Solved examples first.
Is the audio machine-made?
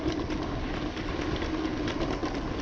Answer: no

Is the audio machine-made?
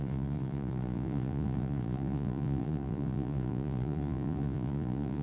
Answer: yes